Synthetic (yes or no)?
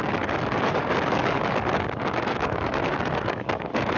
yes